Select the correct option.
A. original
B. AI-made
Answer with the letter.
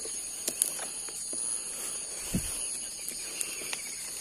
A